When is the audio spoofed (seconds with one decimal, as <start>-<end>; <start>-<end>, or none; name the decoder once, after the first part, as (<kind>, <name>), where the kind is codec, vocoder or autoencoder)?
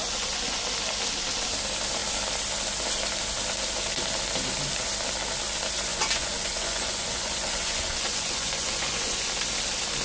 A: 0.0-0.6 (vocoder, Vocos); 5.9-9.3